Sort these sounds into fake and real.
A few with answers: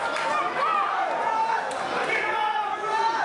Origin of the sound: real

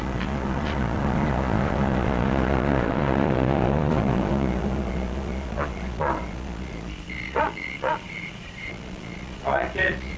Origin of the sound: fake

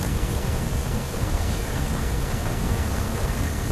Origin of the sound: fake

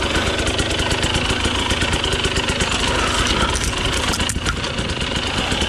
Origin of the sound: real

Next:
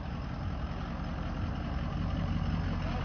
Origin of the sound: real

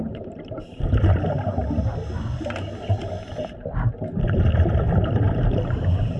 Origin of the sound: real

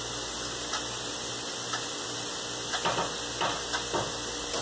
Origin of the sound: real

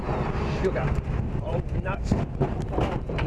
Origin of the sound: fake